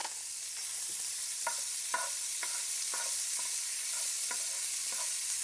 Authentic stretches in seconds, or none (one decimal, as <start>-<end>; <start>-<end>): 0.0-0.8